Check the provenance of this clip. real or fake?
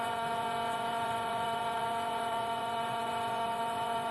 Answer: fake